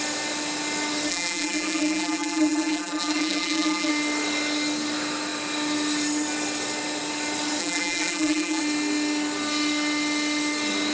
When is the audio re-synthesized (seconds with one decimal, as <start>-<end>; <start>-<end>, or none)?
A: 1.1-3.9; 7.6-8.6